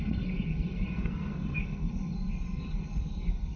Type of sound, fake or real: fake